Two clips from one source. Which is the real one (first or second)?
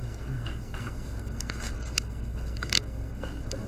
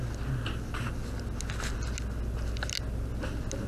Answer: second